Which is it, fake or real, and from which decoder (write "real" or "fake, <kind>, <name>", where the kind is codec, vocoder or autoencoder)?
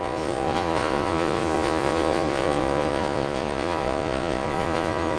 fake, vocoder, Vocos